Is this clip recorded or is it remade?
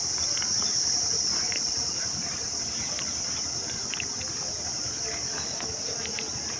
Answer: recorded